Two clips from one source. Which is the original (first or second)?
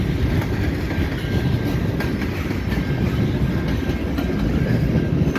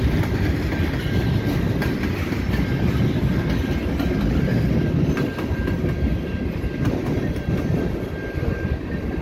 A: first